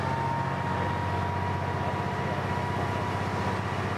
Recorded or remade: recorded